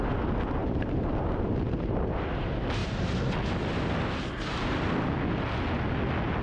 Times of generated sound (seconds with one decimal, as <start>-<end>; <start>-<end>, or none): 0.6-2.3; 2.8-3.3; 4.5-5.1